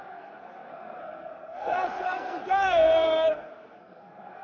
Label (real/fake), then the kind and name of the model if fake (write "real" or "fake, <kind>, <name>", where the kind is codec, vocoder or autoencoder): fake, codec, SNAC